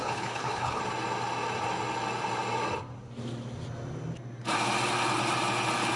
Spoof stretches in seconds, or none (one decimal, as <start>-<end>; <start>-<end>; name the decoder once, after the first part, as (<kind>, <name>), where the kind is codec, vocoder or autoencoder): 0.0-0.8 (codec, HILCodec)